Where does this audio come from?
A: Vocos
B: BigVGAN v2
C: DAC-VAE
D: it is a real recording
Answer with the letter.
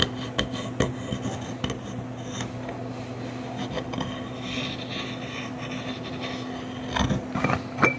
D